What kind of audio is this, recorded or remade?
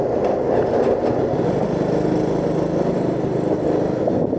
recorded